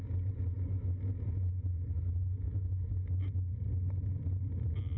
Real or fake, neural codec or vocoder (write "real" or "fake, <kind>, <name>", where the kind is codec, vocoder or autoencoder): real